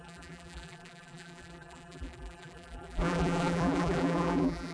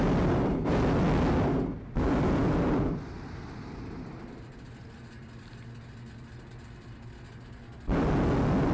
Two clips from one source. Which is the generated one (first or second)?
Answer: first